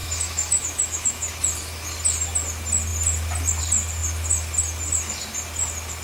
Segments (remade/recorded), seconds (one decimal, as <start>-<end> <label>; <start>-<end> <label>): 0.0-1.3 remade; 1.3-6.0 recorded